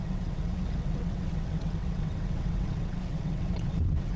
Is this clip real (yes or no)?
no